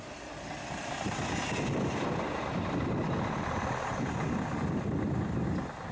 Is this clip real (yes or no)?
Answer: yes